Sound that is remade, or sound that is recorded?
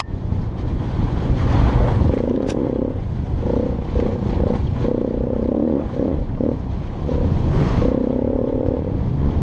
remade